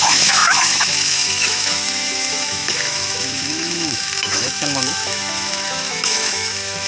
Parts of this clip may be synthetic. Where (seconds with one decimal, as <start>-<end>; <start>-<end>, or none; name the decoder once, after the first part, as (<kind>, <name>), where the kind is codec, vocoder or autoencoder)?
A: 0.0-6.9 (autoencoder, DAC-VAE)